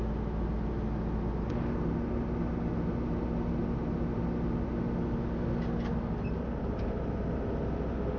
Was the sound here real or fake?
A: real